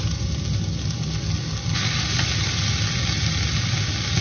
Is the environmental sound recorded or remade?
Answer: recorded